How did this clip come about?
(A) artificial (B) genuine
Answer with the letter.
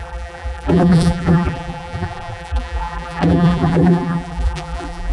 A